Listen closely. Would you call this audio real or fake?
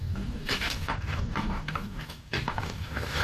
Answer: fake